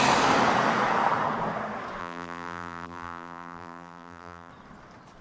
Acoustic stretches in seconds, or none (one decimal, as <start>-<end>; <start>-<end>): 0.0-2.0; 4.5-5.2